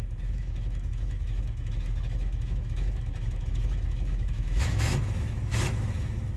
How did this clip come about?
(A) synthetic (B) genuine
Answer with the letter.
A